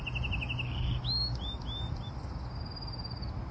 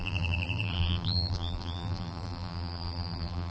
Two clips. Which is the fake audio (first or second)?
second